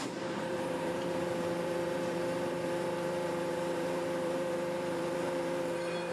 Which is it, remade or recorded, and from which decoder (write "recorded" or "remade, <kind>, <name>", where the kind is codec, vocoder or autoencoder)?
remade, vocoder, BigVGAN v2